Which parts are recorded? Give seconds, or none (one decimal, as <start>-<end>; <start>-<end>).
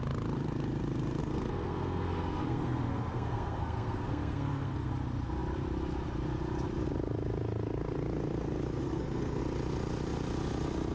0.0-1.2; 4.9-8.8; 9.4-10.9